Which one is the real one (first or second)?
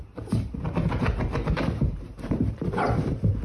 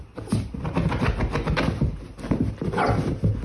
second